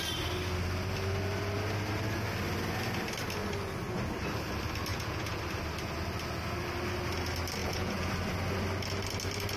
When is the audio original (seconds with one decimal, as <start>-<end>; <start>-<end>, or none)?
0.0-4.9; 5.4-7.6; 8.1-9.6